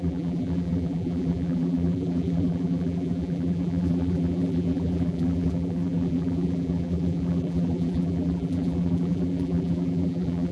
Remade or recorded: remade